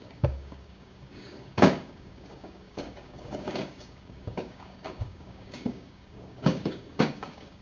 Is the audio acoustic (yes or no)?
no